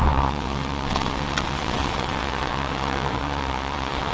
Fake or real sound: fake